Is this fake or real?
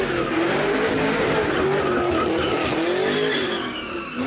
real